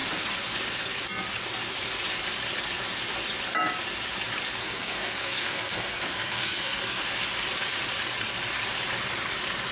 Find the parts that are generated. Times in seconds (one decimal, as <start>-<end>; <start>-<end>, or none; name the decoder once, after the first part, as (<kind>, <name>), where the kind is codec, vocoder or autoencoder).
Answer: 4.6-7.0 (codec, SNAC)